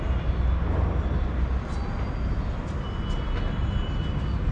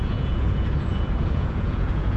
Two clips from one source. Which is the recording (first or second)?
first